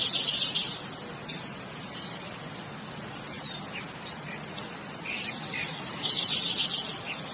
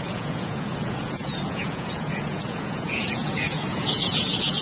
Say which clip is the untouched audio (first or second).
first